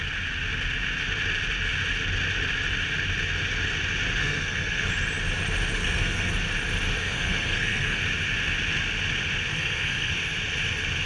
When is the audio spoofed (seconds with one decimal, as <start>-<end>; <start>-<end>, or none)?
4.2-4.9; 5.8-6.3; 7.0-8.0; 9.5-10.1